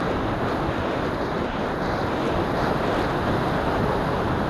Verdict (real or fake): real